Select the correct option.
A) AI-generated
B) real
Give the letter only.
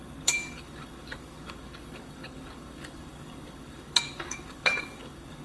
A